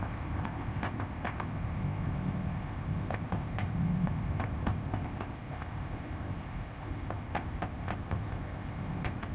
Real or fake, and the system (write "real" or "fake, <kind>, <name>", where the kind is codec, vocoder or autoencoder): fake, codec, ZipCodec